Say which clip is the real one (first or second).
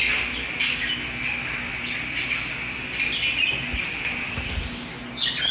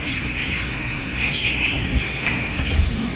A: first